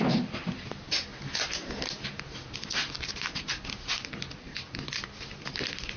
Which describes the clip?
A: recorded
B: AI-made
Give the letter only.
A